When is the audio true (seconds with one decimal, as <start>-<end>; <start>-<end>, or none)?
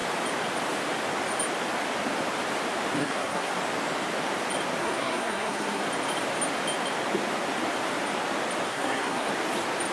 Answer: 0.0-3.0; 3.5-4.8; 5.8-8.7; 9.3-9.9